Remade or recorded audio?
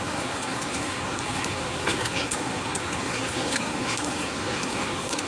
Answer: remade